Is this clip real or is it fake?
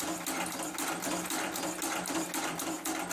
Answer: fake